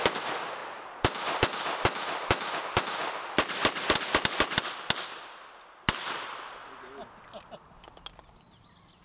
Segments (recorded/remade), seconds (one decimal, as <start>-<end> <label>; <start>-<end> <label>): 0.0-9.0 recorded